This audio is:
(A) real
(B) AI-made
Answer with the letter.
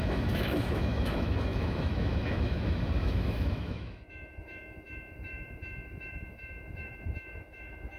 B